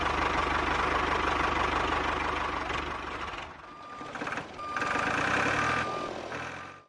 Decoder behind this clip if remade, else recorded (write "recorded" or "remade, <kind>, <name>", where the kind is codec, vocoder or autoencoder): recorded